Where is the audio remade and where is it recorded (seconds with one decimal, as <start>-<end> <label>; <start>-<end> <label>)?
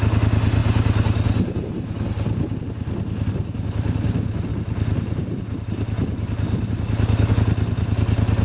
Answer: 0.0-8.4 recorded